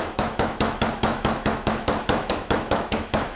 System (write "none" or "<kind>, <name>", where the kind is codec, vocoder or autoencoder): autoencoder, DAC-VAE